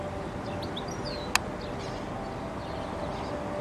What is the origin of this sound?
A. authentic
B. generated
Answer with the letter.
A